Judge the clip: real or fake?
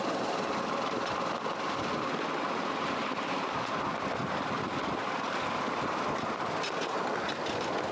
real